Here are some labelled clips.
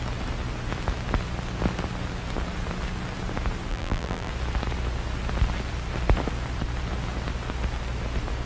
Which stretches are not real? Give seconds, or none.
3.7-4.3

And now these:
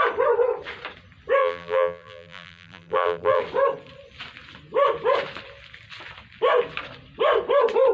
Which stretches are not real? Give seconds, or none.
1.4-3.4

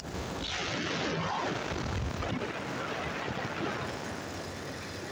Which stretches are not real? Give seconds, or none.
none

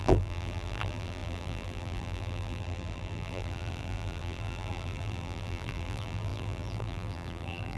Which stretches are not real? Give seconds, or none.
0.0-7.8

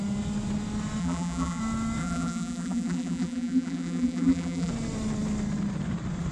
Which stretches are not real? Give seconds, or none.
1.0-1.6; 2.0-4.7

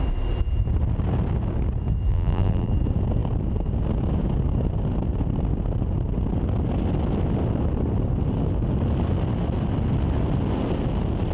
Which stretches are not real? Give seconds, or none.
2.1-2.7

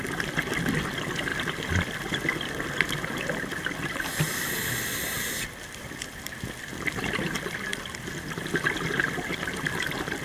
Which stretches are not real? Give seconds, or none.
none